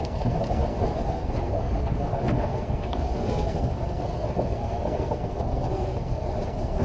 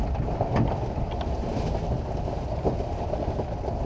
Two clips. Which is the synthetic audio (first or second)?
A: first